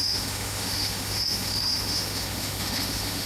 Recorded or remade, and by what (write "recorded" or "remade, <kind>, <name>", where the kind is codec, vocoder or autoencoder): remade, autoencoder, DAC-VAE